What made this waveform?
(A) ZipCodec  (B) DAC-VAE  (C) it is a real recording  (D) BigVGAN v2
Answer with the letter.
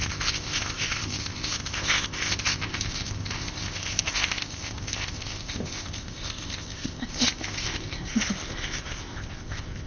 A